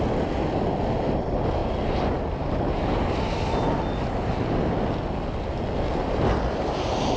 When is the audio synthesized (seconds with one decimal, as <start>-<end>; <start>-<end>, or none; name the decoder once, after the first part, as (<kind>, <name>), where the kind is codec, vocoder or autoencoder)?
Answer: none